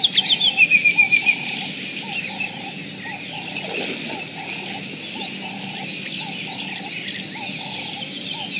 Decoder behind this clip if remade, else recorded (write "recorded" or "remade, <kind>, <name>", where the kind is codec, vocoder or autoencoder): recorded